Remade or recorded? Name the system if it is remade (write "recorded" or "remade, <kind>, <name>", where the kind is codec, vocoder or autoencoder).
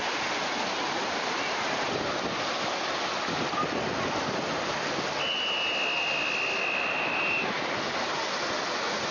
recorded